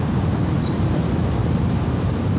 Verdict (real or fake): fake